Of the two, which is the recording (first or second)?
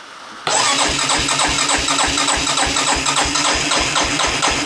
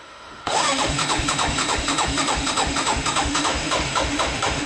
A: first